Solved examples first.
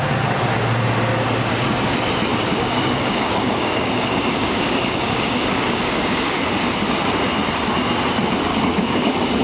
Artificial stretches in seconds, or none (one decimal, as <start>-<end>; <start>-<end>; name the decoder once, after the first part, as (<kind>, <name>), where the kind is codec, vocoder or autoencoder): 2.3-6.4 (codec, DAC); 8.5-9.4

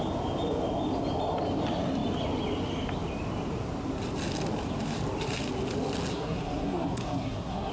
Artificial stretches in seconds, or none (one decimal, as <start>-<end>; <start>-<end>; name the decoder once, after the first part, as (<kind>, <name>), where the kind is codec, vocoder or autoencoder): 6.1-7.7 (codec, SNAC)

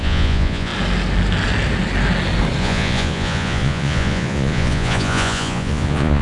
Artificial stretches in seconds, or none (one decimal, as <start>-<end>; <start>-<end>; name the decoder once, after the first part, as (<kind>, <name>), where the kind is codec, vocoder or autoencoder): 0.0-0.7 (vocoder, Vocos); 2.6-6.2

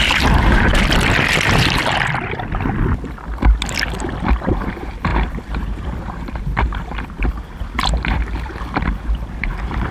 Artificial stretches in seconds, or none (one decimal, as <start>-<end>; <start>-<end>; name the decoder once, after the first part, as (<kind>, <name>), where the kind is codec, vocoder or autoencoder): 0.0-0.7 (vocoder, BigVGAN v2); 4.5-9.9

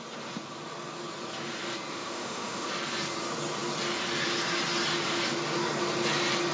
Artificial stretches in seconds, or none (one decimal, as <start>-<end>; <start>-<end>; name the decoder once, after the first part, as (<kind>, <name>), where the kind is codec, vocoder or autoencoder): 1.9-2.7 (autoencoder, DAC-VAE)

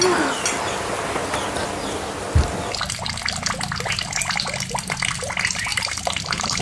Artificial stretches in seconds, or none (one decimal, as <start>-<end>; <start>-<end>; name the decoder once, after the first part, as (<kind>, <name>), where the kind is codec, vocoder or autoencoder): 5.7-6.6 (vocoder, BigVGAN v2)

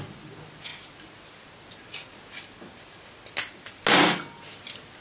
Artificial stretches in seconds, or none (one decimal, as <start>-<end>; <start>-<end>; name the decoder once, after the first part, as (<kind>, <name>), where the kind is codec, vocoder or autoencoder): none